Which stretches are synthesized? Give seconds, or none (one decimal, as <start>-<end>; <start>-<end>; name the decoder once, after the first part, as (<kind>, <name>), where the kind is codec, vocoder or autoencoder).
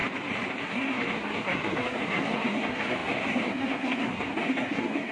0.6-5.1 (codec, SNAC)